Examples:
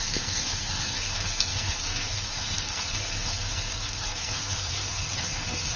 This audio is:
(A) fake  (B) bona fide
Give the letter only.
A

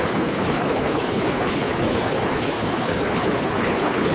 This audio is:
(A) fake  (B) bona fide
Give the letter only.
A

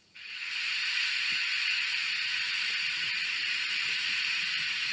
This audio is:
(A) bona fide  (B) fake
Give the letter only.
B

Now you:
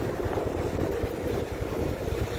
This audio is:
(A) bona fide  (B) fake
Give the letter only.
B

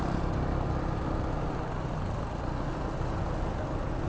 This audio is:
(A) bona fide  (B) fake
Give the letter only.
A